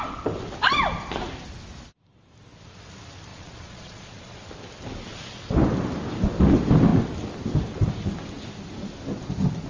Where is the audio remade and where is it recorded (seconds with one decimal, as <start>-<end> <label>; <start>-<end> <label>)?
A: 0.0-3.3 recorded; 3.3-4.5 remade; 4.5-9.7 recorded